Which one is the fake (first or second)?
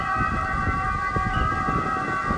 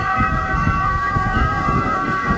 second